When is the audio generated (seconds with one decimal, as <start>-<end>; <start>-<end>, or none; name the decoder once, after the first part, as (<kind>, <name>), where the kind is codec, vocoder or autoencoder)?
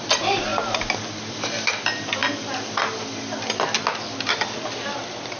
0.0-2.2 (vocoder, BigVGAN v2); 4.3-5.4